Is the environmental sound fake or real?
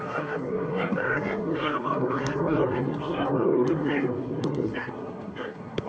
fake